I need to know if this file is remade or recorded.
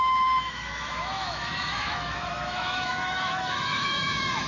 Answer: remade